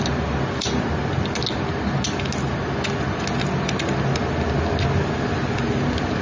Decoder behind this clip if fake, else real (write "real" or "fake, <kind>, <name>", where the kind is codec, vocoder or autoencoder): real